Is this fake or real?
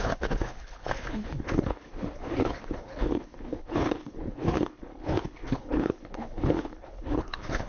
fake